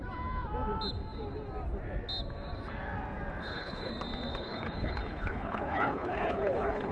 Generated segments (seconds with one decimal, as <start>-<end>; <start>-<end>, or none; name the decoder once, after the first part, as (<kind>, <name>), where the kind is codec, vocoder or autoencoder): 3.4-3.9 (codec, HILCodec); 4.3-6.9